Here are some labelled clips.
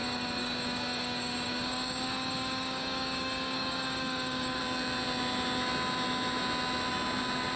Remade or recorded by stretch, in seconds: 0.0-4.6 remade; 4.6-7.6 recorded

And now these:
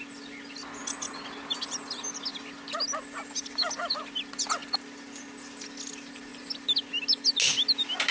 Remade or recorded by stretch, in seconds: 0.0-8.1 recorded

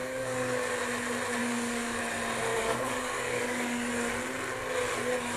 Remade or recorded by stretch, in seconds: 0.0-0.7 remade; 0.7-1.4 recorded; 1.4-2.0 remade; 2.0-2.5 recorded; 2.5-3.9 remade; 3.9-5.4 recorded

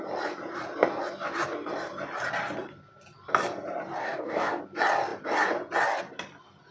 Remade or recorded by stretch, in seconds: 0.0-4.0 recorded; 4.0-4.6 remade; 4.6-6.7 recorded

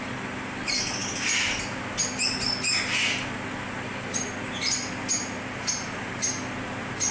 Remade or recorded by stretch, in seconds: 0.0-7.1 recorded